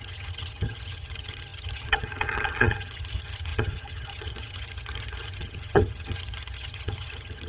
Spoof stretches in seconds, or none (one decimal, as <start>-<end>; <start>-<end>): 0.0-7.5